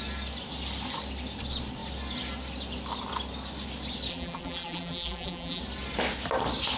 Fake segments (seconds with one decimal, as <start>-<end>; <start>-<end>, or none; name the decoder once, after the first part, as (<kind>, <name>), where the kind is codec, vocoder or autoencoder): 4.1-5.6 (vocoder, BigVGAN v2)